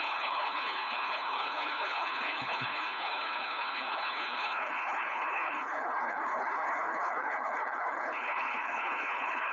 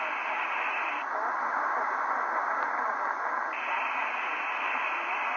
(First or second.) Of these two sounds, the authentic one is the second